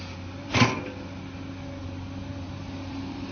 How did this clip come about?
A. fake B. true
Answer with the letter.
B